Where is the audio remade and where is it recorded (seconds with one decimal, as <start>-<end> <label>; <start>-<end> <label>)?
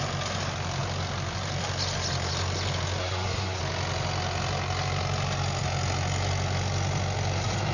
0.0-3.0 recorded; 3.0-3.6 remade; 3.6-7.7 recorded